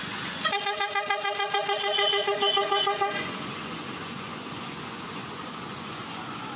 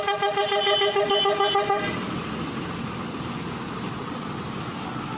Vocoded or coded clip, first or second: first